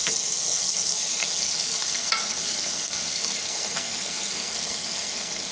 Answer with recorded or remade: remade